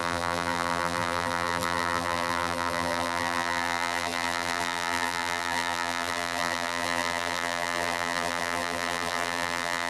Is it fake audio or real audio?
fake